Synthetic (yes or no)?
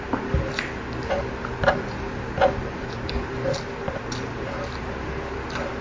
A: yes